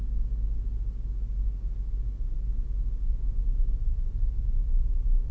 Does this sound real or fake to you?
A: real